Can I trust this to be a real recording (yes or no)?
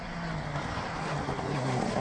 yes